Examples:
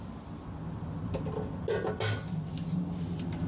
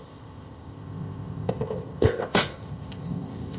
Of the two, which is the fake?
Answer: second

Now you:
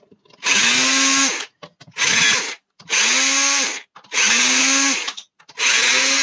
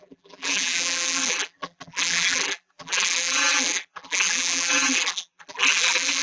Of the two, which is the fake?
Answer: second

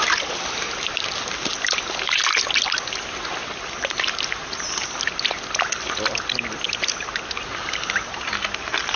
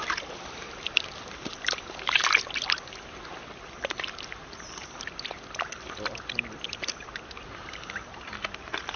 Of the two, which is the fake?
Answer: second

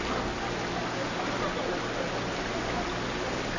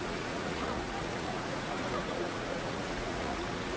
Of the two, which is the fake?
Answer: second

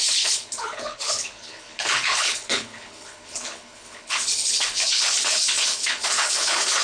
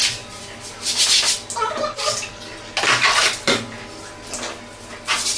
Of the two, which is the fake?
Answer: first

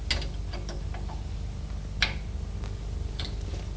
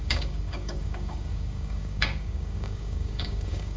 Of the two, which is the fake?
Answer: second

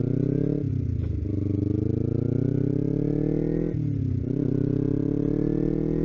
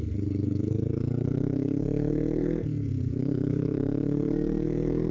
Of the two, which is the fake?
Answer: second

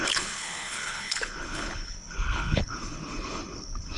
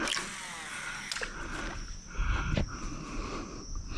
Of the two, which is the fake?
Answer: first